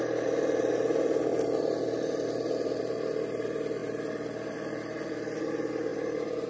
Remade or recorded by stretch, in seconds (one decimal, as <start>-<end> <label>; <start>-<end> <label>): 0.0-1.3 recorded; 1.3-2.8 remade; 2.8-6.5 recorded

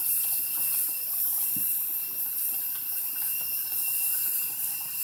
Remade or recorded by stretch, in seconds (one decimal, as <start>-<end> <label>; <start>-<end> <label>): 0.0-5.0 remade

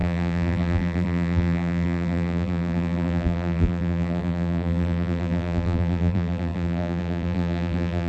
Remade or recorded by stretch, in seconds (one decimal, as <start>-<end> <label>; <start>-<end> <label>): 0.0-8.1 remade

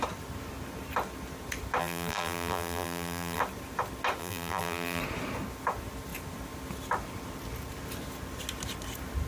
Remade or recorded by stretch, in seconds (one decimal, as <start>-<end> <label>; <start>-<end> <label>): 0.0-1.8 recorded; 1.8-3.4 remade; 3.4-4.2 recorded; 4.2-5.0 remade; 5.0-9.3 recorded

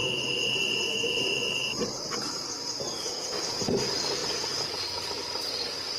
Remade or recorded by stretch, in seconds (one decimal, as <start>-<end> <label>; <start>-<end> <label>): 0.0-3.5 remade; 3.5-4.2 recorded; 4.2-4.8 remade; 4.8-5.2 recorded; 5.2-6.0 remade